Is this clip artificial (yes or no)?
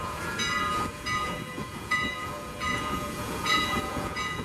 yes